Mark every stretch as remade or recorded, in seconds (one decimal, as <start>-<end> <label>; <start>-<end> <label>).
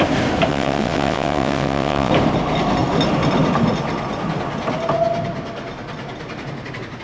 0.0-0.5 recorded; 0.5-2.1 remade; 2.1-7.0 recorded